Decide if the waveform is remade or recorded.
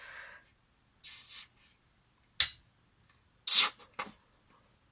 recorded